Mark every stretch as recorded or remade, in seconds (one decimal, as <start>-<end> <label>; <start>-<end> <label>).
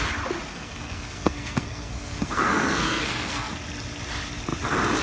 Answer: 0.0-0.5 recorded; 0.5-3.5 remade; 3.5-5.0 recorded